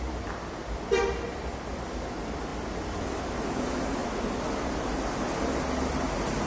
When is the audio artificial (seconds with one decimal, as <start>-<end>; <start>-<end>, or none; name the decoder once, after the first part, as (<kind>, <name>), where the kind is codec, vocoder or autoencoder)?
0.6-1.7 (vocoder, BigVGAN v2)